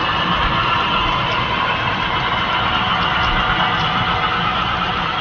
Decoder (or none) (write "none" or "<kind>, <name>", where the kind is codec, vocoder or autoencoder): none